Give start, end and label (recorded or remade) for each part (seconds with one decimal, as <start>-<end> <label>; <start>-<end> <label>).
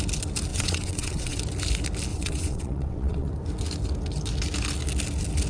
0.0-0.5 recorded; 0.5-1.4 remade; 1.4-2.1 recorded; 2.1-3.3 remade; 3.3-5.5 recorded